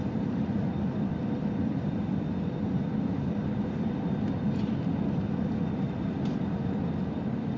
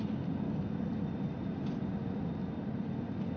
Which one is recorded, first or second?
second